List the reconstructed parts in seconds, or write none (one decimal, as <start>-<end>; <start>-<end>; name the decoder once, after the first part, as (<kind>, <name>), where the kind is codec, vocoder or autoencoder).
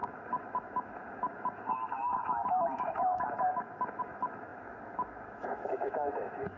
0.0-6.6 (autoencoder, DAC-VAE)